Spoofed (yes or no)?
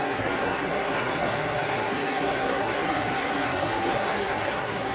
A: yes